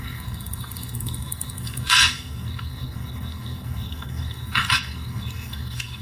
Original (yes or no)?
no